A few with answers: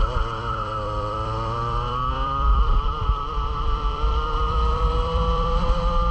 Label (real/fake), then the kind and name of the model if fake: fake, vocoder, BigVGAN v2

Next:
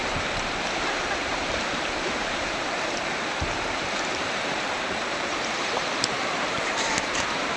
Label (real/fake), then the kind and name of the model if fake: fake, vocoder, BigVGAN v2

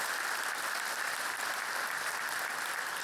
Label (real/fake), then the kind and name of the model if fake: fake, vocoder, BigVGAN v2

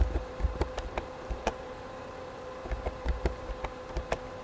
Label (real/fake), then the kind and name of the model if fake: fake, vocoder, BigVGAN v2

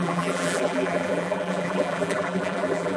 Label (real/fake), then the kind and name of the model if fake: fake, vocoder, BigVGAN v2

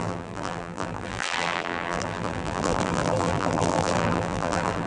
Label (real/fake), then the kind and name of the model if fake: fake, vocoder, BigVGAN v2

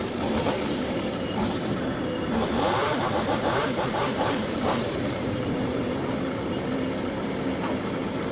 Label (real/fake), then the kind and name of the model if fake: fake, vocoder, BigVGAN v2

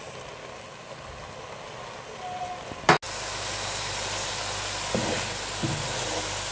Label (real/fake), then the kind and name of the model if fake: real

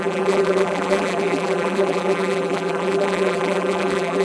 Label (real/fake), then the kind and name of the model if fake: fake, vocoder, BigVGAN v2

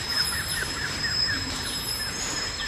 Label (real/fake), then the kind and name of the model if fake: fake, vocoder, BigVGAN v2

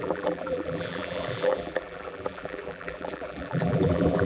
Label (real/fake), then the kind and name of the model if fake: fake, vocoder, BigVGAN v2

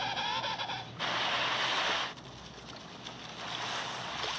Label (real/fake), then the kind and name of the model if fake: real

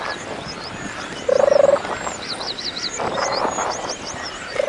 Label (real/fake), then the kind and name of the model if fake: real